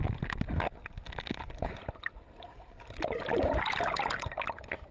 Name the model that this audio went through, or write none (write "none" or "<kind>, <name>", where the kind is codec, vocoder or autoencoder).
none